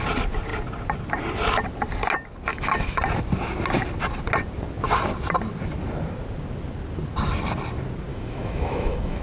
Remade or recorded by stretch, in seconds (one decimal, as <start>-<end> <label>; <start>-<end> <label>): 0.0-2.5 recorded; 2.5-3.0 remade; 3.0-8.1 recorded; 8.1-9.2 remade